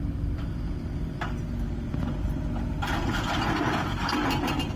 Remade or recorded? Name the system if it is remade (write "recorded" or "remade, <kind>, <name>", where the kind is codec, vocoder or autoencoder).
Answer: remade, vocoder, BigVGAN v2